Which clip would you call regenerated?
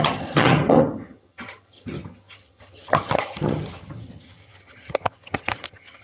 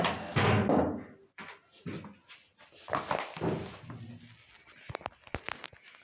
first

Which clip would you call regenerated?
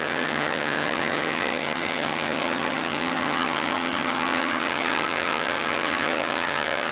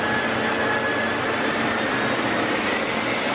first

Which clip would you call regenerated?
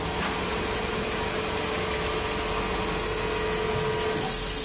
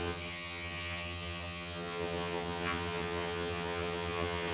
second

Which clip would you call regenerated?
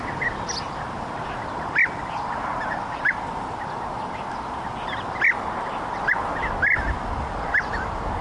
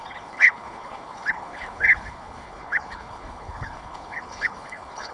second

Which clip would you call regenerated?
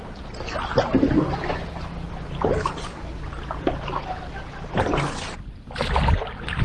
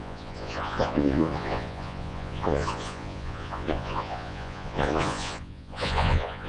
second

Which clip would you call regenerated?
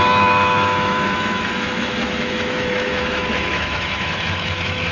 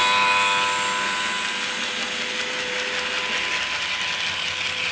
first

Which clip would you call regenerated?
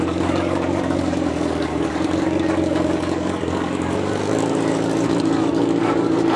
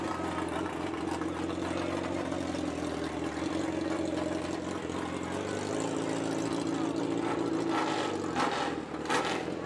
first